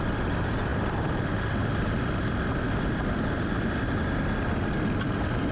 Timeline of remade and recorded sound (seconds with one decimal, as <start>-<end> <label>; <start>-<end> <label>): 0.0-5.5 recorded